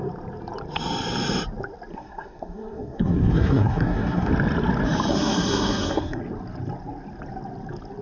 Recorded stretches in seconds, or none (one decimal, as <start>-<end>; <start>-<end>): 0.0-1.9; 4.3-5.1; 6.2-8.0